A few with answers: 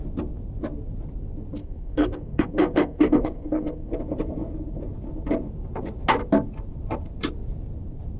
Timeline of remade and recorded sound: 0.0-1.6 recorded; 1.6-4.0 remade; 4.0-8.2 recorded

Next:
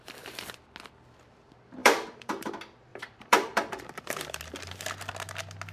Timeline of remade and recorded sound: 0.0-1.8 recorded; 1.8-2.5 remade; 2.5-2.9 recorded; 2.9-4.4 remade; 4.4-5.7 recorded

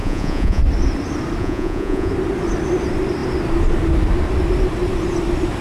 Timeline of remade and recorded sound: 0.0-0.6 remade; 0.6-1.4 recorded; 1.4-2.1 remade; 2.1-5.6 recorded